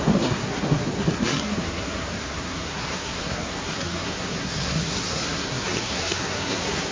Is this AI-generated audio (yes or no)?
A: yes